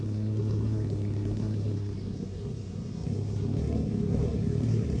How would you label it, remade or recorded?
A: remade